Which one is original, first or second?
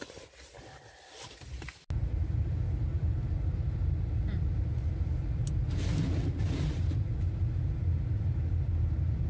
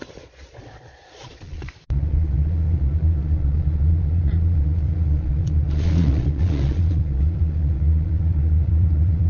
first